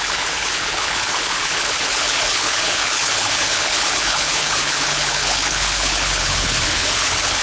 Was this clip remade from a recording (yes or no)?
yes